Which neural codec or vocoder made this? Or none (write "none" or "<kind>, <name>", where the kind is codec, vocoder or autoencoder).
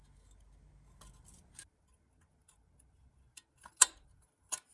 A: none